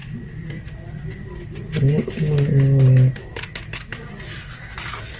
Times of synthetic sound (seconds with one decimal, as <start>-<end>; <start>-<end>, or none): none